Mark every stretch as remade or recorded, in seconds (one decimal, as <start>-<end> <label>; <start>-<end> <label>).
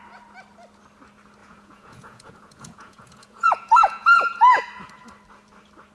0.0-1.4 recorded; 1.4-4.6 remade; 4.6-5.9 recorded